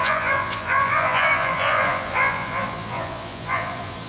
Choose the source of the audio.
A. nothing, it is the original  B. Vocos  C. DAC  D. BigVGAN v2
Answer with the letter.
B